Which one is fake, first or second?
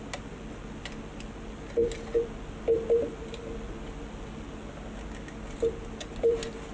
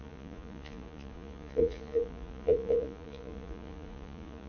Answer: second